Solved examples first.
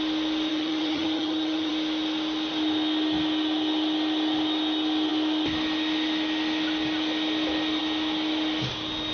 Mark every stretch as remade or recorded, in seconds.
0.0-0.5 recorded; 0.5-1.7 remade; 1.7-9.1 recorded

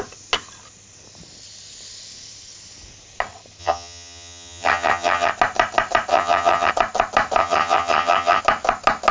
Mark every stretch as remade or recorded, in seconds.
0.0-3.6 recorded; 3.6-5.3 remade; 5.3-6.1 recorded; 6.1-6.7 remade; 6.7-7.4 recorded; 7.4-8.4 remade; 8.4-9.1 recorded

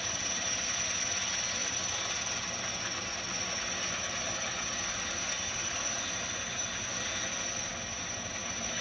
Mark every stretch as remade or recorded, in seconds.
0.0-8.8 recorded

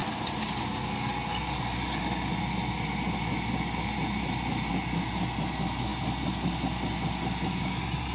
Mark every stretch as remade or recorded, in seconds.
0.0-8.1 recorded